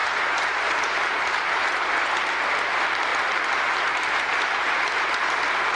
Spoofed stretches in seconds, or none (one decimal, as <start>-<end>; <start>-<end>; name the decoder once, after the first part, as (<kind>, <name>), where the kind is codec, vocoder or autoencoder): 0.0-2.2 (vocoder, BigVGAN v2); 3.1-5.2